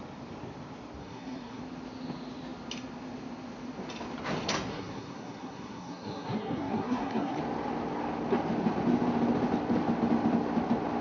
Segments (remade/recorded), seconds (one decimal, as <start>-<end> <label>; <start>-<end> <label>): 0.0-1.0 recorded; 1.0-1.6 remade; 1.6-4.7 recorded; 4.7-7.4 remade; 7.4-11.0 recorded